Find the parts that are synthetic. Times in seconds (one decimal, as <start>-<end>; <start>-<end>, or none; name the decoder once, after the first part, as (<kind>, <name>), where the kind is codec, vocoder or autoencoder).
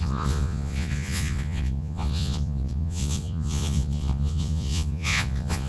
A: 0.0-5.7 (vocoder, Vocos)